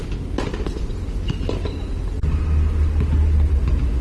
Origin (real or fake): real